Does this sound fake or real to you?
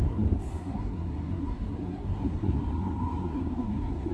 fake